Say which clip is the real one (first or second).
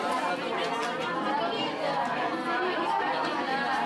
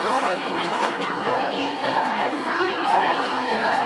first